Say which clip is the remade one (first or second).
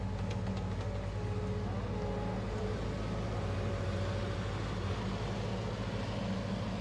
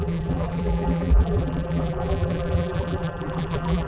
second